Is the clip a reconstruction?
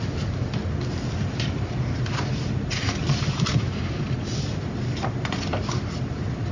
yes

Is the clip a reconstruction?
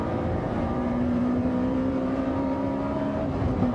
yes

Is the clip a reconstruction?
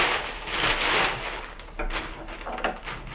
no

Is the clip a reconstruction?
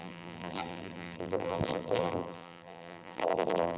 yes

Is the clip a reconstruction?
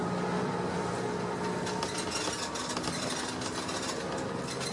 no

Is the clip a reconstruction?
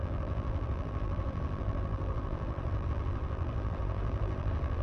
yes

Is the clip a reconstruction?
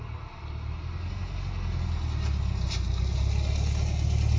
no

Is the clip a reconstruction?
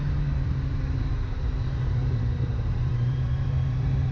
yes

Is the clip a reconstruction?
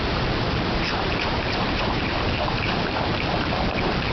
yes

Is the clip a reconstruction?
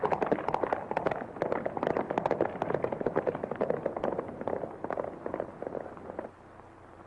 no